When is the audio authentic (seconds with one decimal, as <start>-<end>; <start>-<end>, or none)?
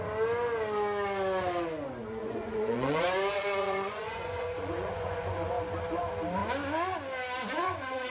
0.0-2.2; 5.5-8.1